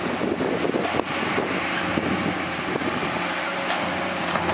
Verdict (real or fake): real